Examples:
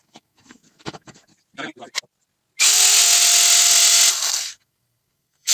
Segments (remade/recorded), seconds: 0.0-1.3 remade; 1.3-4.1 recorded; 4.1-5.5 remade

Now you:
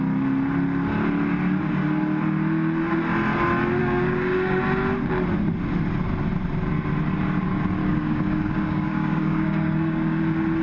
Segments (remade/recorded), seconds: 0.0-3.8 recorded; 3.8-4.6 remade; 4.6-7.8 recorded; 7.8-10.2 remade; 10.2-10.6 recorded

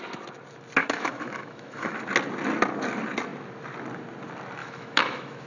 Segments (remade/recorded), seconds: 0.0-0.8 recorded; 0.8-2.0 remade; 2.0-4.6 recorded; 4.6-5.5 remade

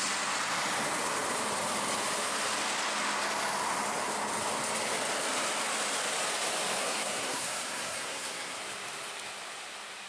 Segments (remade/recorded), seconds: 0.0-6.8 recorded; 6.8-8.6 remade; 8.6-10.1 recorded

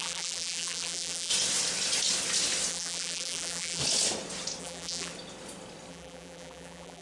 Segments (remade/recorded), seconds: 0.0-1.3 remade; 1.3-2.7 recorded; 2.7-3.8 remade; 3.8-4.6 recorded; 4.6-5.1 remade; 5.1-5.9 recorded; 5.9-7.0 remade

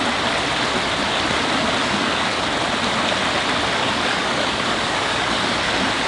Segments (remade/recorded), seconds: 0.0-1.8 recorded; 1.8-2.4 remade; 2.4-3.8 recorded; 3.8-5.6 remade; 5.6-6.1 recorded

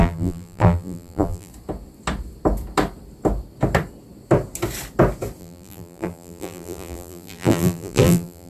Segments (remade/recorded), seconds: 0.0-1.5 remade; 1.5-5.4 recorded; 5.4-8.5 remade

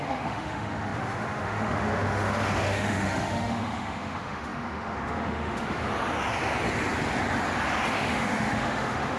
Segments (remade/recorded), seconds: 0.0-5.9 remade; 5.9-7.9 recorded; 7.9-9.2 remade